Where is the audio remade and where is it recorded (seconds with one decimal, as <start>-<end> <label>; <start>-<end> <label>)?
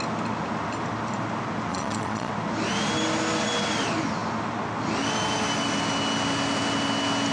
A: 0.0-1.7 recorded; 1.7-2.3 remade; 2.3-7.3 recorded